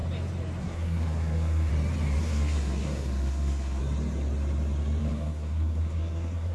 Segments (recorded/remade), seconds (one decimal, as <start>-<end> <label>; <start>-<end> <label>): 0.0-0.6 recorded; 0.6-1.7 remade; 1.7-2.2 recorded; 2.2-3.8 remade; 3.8-5.0 recorded; 5.0-6.5 remade